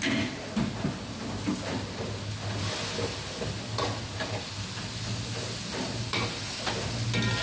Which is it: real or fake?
real